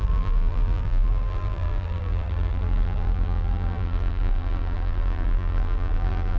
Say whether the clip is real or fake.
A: fake